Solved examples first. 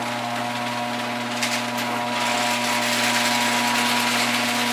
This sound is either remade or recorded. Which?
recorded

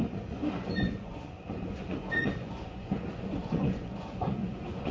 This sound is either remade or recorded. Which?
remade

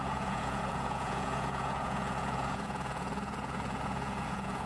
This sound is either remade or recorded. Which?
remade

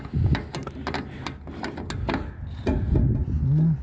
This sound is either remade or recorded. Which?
recorded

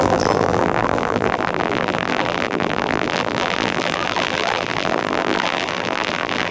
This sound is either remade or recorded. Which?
remade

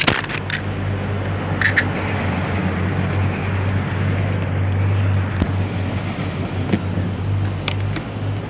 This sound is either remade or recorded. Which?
recorded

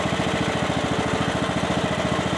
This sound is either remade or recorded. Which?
recorded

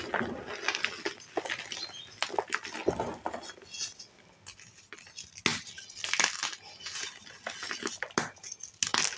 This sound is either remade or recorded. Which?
recorded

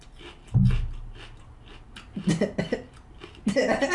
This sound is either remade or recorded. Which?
recorded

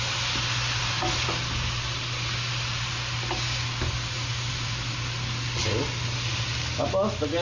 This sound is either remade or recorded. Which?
recorded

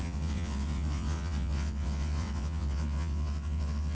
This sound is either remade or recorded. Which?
remade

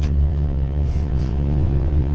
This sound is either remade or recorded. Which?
remade